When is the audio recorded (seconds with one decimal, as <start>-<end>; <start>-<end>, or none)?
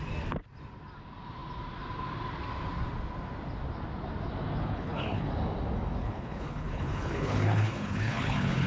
0.0-4.6; 5.3-6.0